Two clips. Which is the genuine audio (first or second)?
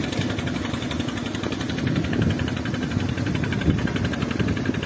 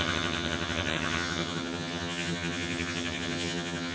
first